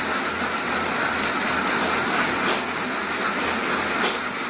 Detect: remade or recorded recorded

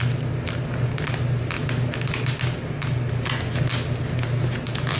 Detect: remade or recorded recorded